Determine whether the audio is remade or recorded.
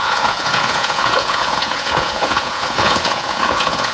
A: remade